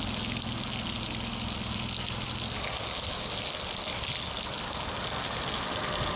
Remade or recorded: recorded